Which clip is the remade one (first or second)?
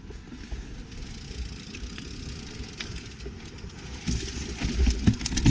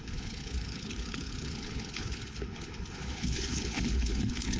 second